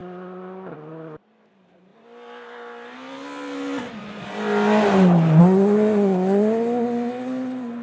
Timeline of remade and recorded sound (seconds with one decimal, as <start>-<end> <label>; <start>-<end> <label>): 0.0-7.8 recorded